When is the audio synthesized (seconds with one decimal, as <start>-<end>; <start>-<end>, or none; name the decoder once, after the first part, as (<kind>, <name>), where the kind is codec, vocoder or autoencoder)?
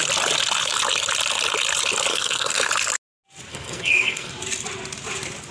2.1-2.7 (codec, SNAC); 3.5-4.3